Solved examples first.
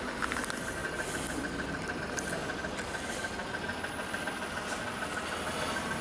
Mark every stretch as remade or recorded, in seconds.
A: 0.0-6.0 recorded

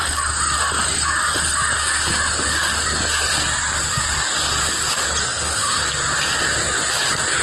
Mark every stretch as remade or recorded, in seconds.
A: 0.0-5.2 recorded; 5.2-5.8 remade; 5.8-7.4 recorded

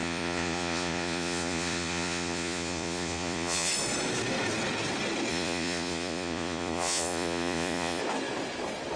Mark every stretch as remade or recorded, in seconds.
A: 0.0-3.7 remade; 3.7-5.3 recorded; 5.3-8.0 remade; 8.0-9.0 recorded

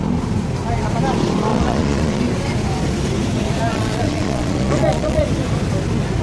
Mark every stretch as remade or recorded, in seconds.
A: 0.0-1.5 recorded; 1.5-2.2 remade; 2.2-3.7 recorded; 3.7-5.2 remade; 5.2-6.2 recorded

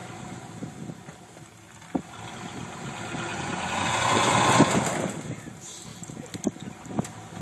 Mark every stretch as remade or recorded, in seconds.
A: 0.0-3.3 recorded; 3.3-4.7 remade; 4.7-7.4 recorded